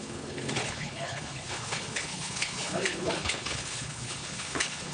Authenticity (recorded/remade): remade